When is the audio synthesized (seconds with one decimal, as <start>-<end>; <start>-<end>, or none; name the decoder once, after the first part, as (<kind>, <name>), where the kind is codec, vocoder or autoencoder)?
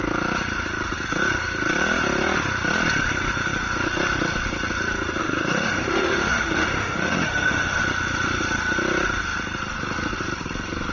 5.2-7.8 (autoencoder, DAC-VAE)